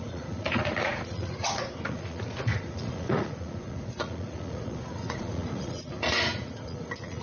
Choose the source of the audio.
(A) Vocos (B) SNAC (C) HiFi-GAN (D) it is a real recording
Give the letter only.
A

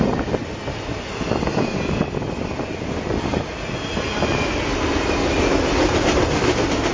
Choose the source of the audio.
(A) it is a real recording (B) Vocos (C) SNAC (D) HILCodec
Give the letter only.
A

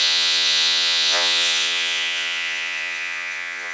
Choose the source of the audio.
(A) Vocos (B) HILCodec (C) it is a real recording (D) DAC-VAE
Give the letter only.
A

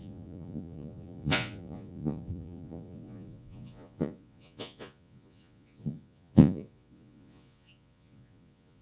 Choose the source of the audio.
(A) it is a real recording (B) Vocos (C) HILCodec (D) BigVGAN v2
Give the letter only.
B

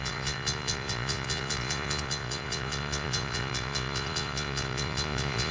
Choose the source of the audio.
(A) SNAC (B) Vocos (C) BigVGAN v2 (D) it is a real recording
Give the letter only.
B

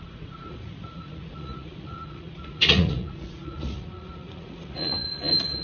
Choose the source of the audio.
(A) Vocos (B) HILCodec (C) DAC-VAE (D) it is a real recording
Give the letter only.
A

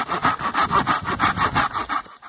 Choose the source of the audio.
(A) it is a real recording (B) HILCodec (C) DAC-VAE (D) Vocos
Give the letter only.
A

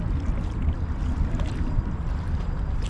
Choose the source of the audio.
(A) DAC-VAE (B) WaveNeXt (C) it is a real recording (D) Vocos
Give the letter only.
C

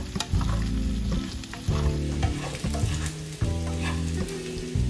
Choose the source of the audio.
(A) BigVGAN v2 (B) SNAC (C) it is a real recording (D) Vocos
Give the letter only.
C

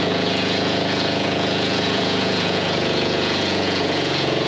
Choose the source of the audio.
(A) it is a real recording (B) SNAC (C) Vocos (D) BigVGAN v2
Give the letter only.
C